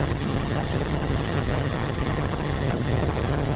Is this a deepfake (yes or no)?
yes